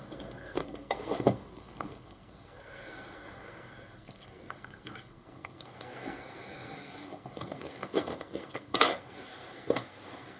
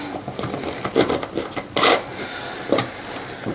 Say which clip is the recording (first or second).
second